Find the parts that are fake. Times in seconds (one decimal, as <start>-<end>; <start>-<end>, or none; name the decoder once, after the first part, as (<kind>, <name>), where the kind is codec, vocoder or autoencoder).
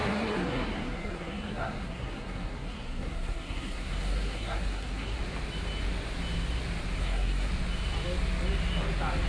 0.0-5.2 (codec, SNAC); 7.0-7.5